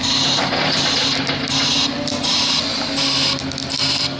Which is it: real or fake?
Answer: real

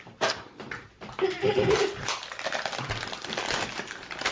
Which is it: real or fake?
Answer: fake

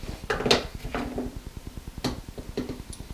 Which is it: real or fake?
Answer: real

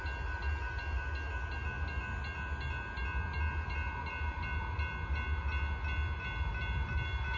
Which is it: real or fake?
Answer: real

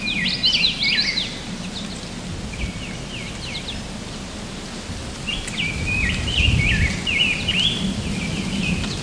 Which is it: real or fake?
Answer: real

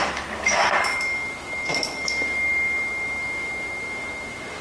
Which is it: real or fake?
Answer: fake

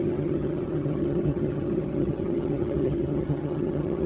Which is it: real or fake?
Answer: fake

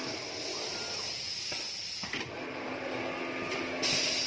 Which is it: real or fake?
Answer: real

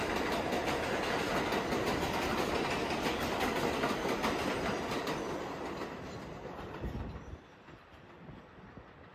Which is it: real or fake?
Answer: real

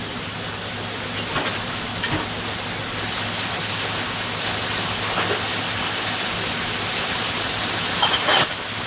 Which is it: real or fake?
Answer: real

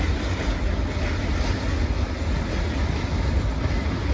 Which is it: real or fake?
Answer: real